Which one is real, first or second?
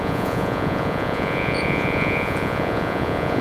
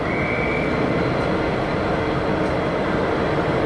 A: second